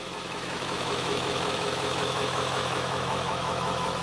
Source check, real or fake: fake